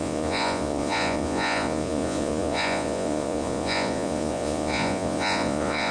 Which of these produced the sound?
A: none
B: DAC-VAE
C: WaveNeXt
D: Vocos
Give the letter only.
D